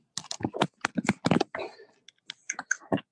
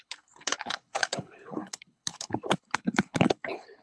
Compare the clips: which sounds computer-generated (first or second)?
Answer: second